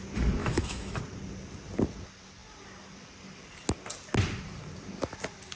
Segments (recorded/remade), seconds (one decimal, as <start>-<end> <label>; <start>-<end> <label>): 0.0-0.4 recorded; 0.4-1.0 remade; 1.0-5.6 recorded